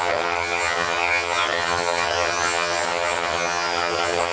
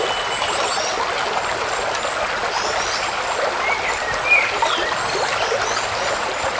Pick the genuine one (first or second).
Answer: second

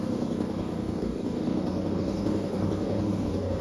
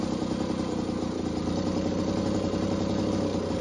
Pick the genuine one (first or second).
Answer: second